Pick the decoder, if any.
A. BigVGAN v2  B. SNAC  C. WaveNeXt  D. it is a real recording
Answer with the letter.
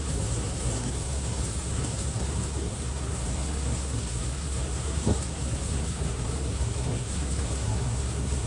B